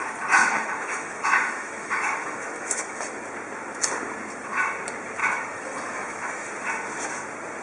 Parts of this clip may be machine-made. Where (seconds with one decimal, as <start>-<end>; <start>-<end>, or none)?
0.4-3.2; 5.2-6.5